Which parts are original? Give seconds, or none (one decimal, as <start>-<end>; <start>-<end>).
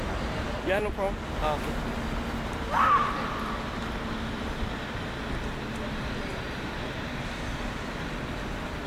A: 0.0-8.9